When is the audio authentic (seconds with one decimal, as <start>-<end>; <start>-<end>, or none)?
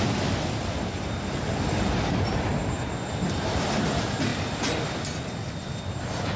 0.0-0.9; 2.5-6.4